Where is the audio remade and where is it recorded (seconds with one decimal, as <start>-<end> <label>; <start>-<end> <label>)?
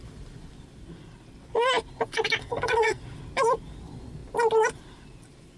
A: 0.0-2.4 recorded; 2.4-3.0 remade; 3.0-5.6 recorded